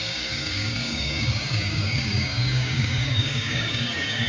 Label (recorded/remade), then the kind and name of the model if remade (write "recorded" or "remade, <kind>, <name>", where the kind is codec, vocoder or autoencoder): remade, codec, DAC